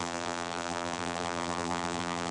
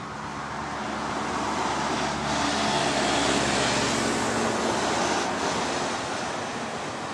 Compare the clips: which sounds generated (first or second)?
first